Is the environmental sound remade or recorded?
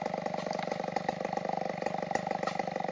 recorded